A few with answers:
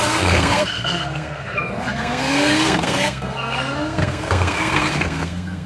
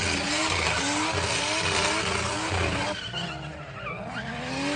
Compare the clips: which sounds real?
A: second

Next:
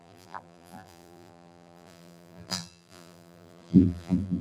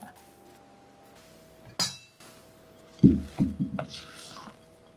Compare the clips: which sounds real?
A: second